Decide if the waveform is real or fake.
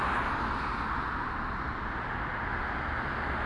real